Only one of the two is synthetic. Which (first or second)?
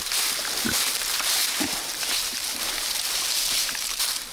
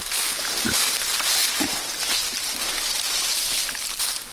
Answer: first